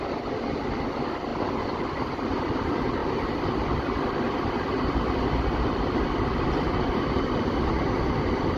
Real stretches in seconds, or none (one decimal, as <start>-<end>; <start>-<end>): 0.0-8.6